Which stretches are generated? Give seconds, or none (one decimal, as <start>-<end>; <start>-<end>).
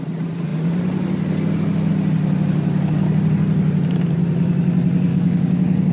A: 5.1-5.9